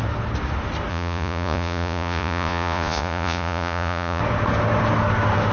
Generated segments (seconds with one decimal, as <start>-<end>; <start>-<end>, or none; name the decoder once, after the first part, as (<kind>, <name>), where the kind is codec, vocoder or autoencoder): 0.9-4.2 (vocoder, Vocos)